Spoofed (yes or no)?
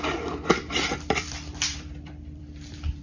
yes